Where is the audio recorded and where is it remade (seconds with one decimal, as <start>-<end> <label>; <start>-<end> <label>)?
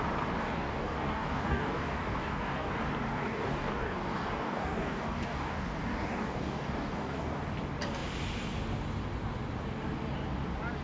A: 0.0-0.4 recorded; 0.4-2.7 remade; 2.7-3.1 recorded; 3.1-7.4 remade; 7.4-10.8 recorded